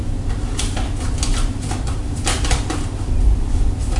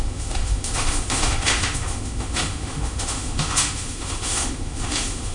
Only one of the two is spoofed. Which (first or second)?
second